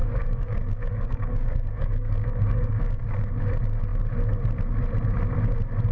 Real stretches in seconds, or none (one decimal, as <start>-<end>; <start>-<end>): 3.0-5.9